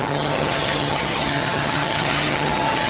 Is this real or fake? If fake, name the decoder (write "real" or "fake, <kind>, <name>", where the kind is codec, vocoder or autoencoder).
fake, vocoder, HiFi-GAN